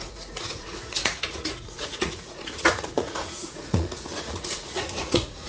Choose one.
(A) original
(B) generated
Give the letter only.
B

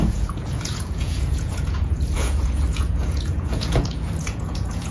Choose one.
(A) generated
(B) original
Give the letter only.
A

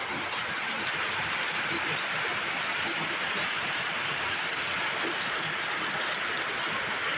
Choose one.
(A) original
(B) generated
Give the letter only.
A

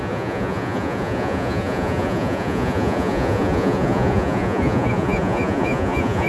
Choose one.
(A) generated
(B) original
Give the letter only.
A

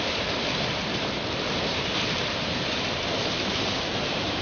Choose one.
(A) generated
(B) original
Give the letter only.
B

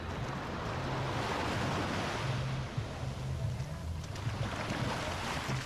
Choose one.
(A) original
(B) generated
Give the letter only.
A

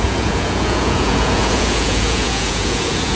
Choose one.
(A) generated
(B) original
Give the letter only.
A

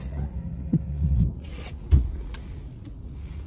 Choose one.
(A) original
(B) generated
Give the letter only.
B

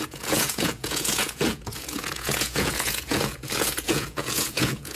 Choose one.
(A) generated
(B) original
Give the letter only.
A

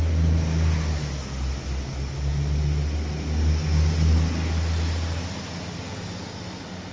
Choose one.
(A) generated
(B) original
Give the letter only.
B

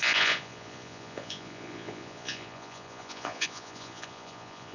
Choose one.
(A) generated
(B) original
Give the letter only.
A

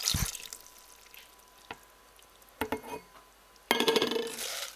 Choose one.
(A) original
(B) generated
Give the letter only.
A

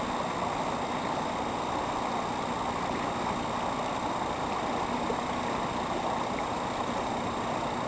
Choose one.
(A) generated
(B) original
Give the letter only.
B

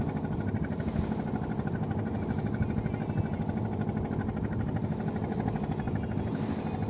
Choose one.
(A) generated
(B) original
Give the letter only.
B